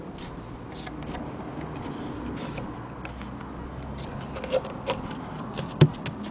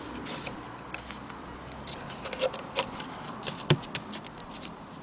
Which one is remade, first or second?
second